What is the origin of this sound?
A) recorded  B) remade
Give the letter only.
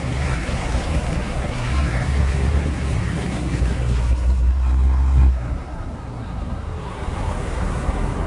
B